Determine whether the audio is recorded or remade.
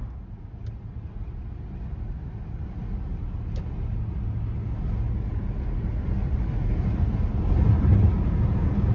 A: recorded